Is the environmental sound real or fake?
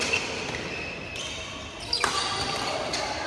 real